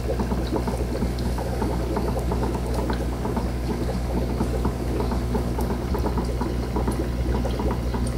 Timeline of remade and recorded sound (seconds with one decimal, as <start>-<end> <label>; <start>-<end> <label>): 0.0-1.0 recorded; 1.0-5.9 remade; 5.9-8.2 recorded